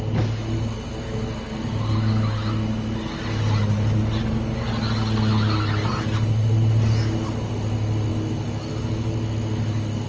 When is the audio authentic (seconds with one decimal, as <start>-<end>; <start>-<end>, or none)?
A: 0.0-10.1